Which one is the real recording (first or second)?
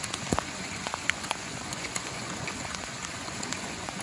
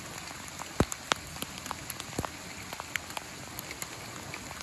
second